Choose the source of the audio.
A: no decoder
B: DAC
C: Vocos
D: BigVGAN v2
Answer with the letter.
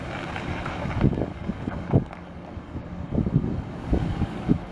B